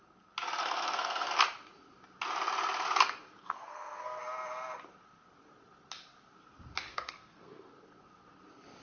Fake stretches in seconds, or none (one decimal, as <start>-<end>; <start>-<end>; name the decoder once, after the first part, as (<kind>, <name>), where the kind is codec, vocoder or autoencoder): 0.6-1.3 (codec, SNAC); 3.4-4.2; 6.9-7.7